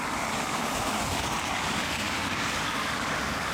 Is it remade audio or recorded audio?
remade